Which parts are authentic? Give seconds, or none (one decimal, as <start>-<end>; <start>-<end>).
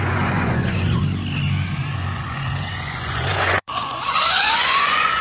1.0-1.8